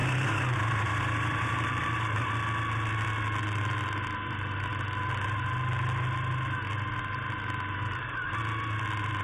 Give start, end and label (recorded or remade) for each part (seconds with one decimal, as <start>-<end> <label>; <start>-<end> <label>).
0.0-2.3 remade; 2.3-9.2 recorded